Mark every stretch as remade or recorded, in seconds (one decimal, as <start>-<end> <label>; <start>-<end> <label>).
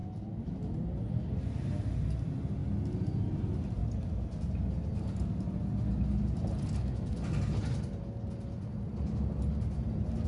0.0-10.3 recorded